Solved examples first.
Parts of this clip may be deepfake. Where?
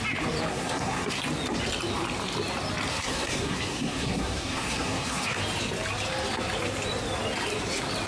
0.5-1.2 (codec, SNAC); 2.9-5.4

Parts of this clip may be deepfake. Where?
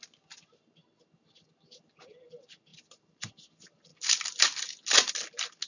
3.9-4.4 (vocoder, BigVGAN v2)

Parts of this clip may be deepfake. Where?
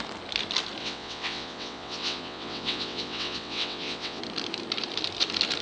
0.8-4.2 (vocoder, WaveNeXt)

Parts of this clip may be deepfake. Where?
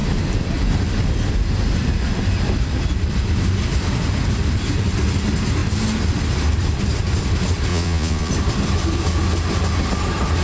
7.7-8.3 (vocoder, Vocos)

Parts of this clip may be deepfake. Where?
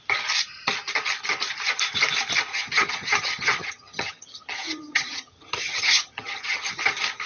2.5-6.7 (vocoder, HiFi-GAN)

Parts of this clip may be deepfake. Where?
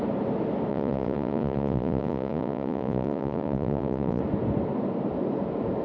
0.7-4.2 (vocoder, Vocos)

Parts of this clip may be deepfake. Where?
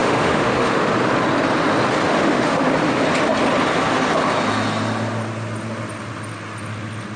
0.0-0.9 (autoencoder, DAC-VAE); 2.1-2.7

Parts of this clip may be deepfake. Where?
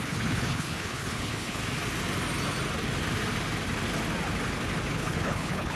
0.0-1.6 (codec, HILCodec); 4.9-5.8